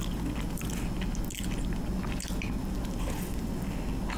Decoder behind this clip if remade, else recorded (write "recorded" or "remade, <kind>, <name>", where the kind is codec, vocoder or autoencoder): recorded